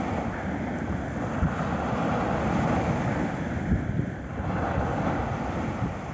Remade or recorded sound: recorded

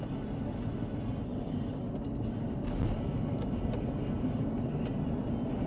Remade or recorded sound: recorded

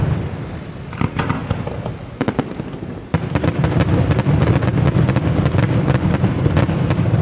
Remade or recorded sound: recorded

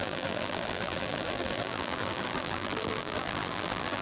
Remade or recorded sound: remade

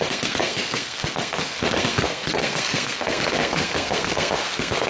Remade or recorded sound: remade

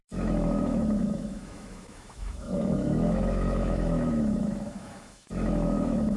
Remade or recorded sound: remade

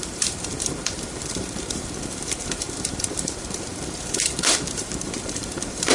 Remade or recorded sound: remade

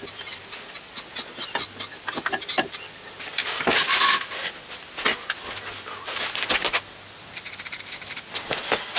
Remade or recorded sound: recorded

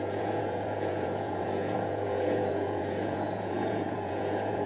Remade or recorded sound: remade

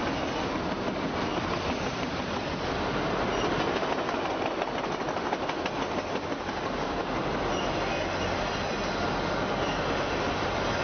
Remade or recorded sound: recorded